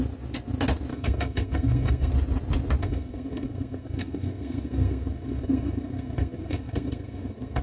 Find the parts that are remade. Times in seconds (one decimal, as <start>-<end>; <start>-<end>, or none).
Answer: 0.9-2.1; 2.8-7.6

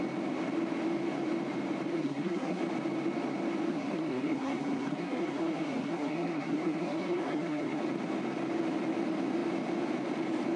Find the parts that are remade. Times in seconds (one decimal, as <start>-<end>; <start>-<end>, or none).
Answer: 1.9-2.6; 3.7-7.8

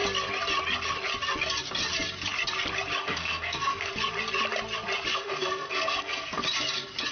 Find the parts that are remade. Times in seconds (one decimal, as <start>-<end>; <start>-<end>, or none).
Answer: 3.0-3.9; 5.1-6.4

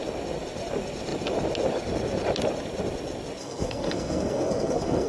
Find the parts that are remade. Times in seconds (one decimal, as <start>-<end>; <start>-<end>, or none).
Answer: 3.4-5.1

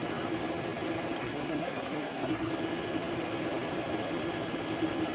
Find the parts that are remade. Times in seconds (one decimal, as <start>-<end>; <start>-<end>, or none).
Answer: 1.2-2.5